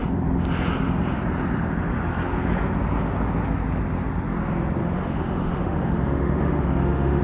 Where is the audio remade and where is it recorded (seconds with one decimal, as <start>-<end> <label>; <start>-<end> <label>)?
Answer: 0.0-4.8 recorded; 4.8-7.2 remade